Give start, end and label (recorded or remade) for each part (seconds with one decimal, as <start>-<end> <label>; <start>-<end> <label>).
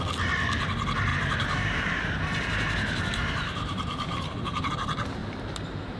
0.0-1.1 recorded; 1.1-4.7 remade; 4.7-5.2 recorded; 5.2-6.0 remade